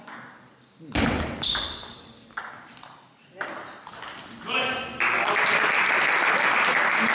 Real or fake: real